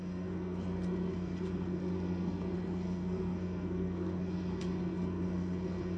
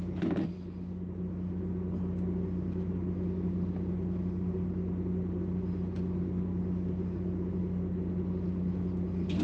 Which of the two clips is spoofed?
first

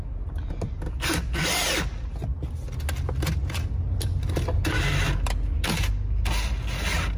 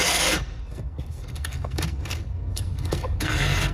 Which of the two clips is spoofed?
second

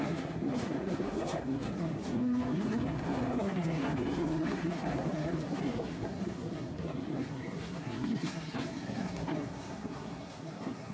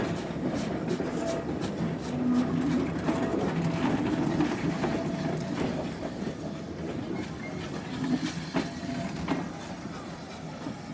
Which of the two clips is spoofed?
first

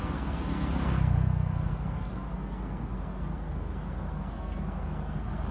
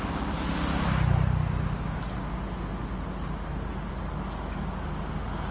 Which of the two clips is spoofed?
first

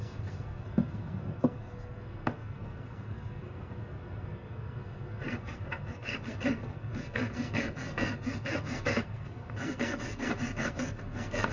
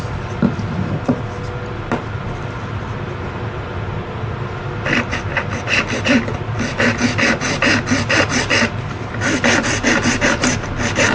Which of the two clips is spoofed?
first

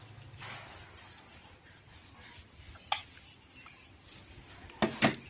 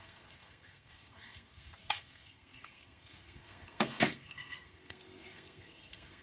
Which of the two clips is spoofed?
second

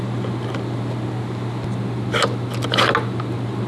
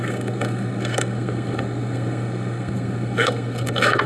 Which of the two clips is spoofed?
second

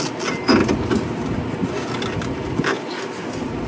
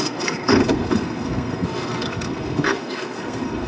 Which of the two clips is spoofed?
second